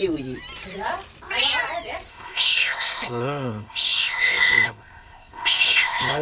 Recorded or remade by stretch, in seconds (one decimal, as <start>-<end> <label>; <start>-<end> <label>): 0.0-2.1 recorded; 2.1-6.2 remade